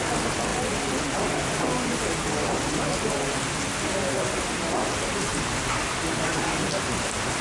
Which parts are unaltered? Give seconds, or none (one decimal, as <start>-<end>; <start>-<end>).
0.0-7.4